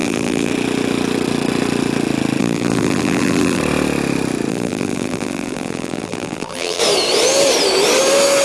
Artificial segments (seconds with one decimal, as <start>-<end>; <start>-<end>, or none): 0.0-0.5; 2.4-3.6; 4.5-6.8